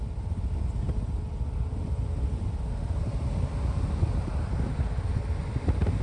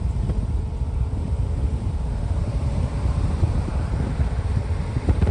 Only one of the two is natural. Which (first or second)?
first